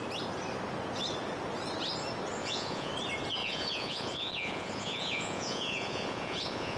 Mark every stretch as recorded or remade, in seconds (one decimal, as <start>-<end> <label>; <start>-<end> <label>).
0.0-2.4 recorded; 2.4-2.9 remade; 2.9-3.4 recorded; 3.4-6.8 remade